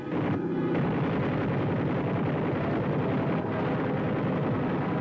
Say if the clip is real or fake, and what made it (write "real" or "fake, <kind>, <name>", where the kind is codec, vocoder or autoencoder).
real